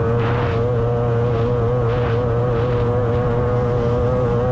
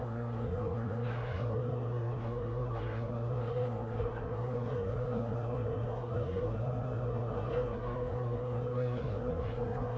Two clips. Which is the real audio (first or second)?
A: first